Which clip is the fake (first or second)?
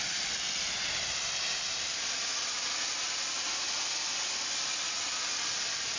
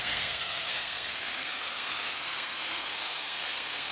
second